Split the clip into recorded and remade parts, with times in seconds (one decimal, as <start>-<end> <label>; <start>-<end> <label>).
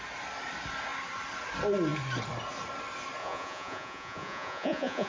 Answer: 0.0-3.2 recorded; 3.2-5.1 remade